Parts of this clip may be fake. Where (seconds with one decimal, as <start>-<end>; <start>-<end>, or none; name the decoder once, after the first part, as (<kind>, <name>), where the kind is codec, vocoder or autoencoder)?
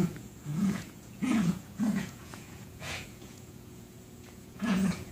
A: 0.0-5.1 (vocoder, Vocos)